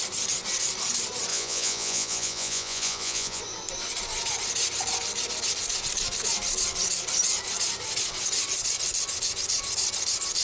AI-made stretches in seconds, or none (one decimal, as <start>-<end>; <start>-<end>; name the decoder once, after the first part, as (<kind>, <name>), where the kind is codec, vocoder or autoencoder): 1.3-3.4 (vocoder, Vocos)